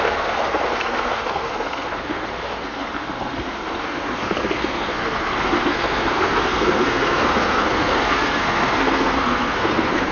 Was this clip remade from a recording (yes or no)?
yes